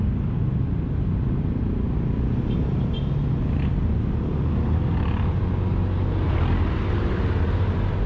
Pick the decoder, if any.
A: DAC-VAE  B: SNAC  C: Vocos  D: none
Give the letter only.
D